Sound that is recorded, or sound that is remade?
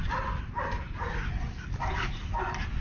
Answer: recorded